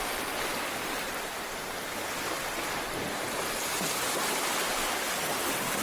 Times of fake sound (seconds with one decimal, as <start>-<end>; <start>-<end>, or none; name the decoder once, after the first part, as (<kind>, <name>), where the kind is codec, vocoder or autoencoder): none